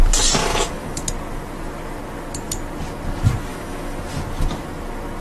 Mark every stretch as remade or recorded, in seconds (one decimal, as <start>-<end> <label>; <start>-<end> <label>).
0.0-0.4 recorded; 0.4-1.1 remade; 1.1-3.5 recorded; 3.5-4.0 remade; 4.0-5.2 recorded